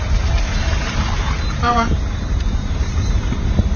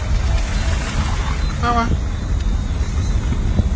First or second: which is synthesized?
first